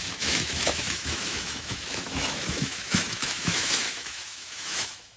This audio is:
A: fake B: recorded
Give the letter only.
A